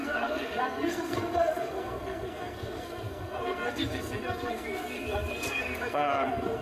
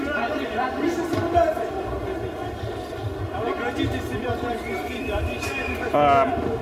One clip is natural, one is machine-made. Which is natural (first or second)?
second